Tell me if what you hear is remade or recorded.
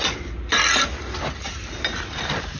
recorded